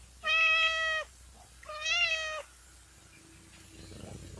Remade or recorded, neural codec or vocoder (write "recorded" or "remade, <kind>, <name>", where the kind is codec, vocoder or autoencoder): recorded